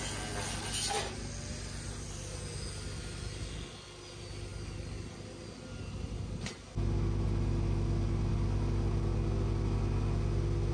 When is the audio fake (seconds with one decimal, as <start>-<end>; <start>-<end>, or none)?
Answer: none